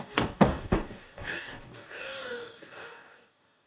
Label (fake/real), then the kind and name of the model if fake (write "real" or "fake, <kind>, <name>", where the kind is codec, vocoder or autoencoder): fake, codec, DAC